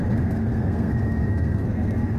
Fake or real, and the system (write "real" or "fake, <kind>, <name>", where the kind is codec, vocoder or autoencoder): fake, codec, SNAC